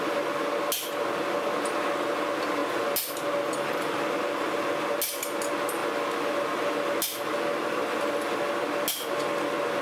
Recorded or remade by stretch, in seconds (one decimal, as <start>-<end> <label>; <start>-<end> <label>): 0.0-9.8 recorded